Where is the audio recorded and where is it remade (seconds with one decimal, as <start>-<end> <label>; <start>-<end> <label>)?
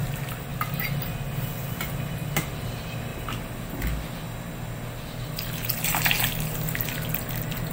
0.0-7.7 recorded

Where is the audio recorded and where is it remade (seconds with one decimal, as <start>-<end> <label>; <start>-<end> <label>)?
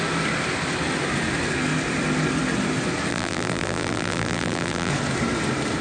0.0-3.1 recorded; 3.1-4.9 remade; 4.9-5.8 recorded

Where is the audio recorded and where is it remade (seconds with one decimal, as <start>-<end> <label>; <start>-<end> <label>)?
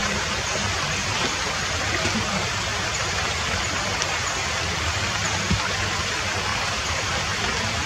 0.0-0.8 remade; 0.8-2.7 recorded; 2.7-3.6 remade; 3.6-6.5 recorded; 6.5-7.1 remade; 7.1-7.9 recorded